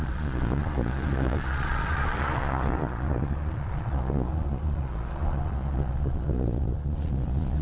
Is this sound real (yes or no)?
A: no